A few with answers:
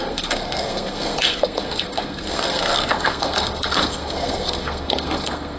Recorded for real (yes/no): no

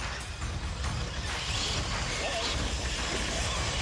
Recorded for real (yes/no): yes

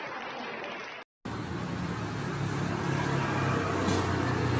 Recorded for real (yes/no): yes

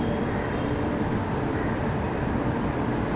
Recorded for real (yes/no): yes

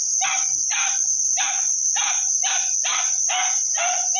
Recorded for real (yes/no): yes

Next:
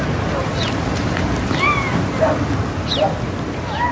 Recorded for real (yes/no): yes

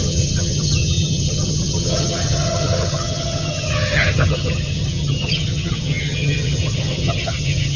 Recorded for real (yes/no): no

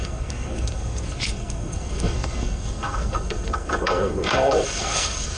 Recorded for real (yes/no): no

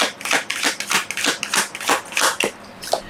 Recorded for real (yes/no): yes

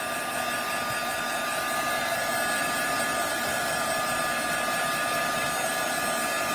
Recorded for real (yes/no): yes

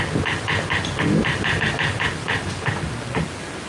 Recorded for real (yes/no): yes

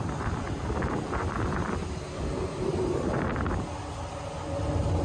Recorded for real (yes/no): yes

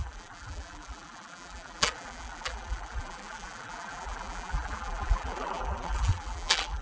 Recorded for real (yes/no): no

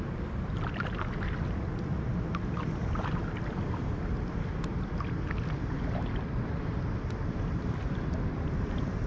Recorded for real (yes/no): yes